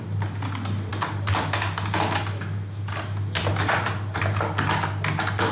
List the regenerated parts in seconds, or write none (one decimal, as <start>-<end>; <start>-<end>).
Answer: none

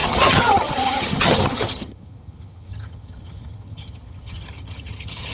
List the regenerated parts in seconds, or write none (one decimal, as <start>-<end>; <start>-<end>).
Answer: 0.0-5.3

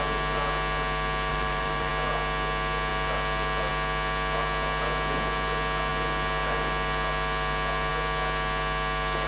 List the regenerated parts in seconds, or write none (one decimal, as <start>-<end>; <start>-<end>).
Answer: 1.3-1.9

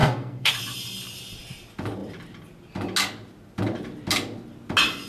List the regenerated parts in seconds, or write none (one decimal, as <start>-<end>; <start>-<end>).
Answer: 0.0-0.5

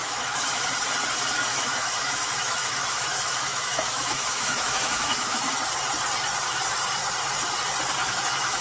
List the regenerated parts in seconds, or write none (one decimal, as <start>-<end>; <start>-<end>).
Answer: 0.0-0.6; 1.5-5.5; 8.0-8.6

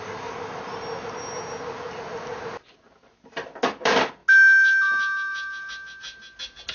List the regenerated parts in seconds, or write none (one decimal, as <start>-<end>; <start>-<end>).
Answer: none

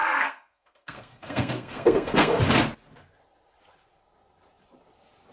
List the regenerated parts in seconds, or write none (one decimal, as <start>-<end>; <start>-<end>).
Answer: 0.0-2.4

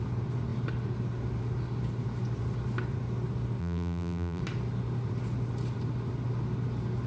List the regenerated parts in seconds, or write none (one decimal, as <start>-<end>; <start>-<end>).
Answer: 3.6-4.4